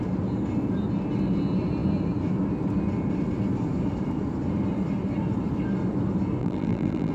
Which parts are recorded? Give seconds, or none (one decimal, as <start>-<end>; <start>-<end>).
0.0-6.4